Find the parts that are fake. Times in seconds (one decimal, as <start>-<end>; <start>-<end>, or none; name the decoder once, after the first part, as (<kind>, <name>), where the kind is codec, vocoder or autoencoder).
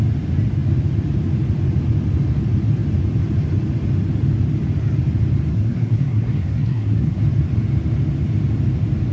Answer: 5.5-7.2 (codec, SNAC)